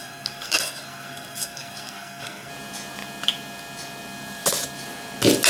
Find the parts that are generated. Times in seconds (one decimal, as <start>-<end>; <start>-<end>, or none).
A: 0.0-2.5